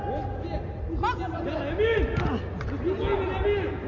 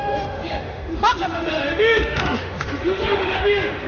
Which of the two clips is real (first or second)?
first